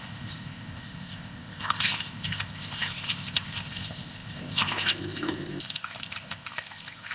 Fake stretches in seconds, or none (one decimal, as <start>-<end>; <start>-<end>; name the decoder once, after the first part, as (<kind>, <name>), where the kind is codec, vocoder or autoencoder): 0.0-7.1 (codec, ZipCodec)